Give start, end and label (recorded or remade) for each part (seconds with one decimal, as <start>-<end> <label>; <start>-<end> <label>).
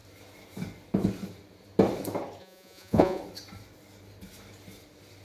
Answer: 0.0-2.4 recorded; 2.4-3.2 remade; 3.2-5.2 recorded